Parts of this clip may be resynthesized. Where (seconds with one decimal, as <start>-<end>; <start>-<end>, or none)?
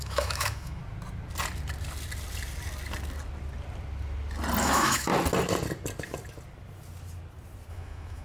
0.0-0.8; 4.6-5.1; 7.7-8.2